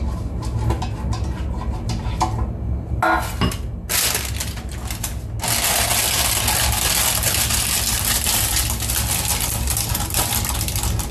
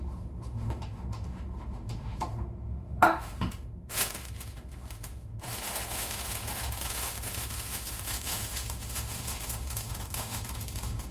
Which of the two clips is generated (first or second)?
second